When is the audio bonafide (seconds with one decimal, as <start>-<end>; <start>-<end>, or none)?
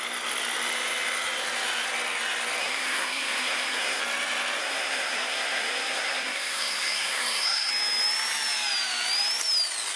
0.0-2.6; 4.0-4.6; 7.7-10.0